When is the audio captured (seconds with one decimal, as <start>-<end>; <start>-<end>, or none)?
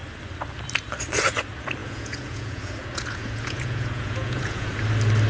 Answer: 0.0-1.8; 4.8-5.3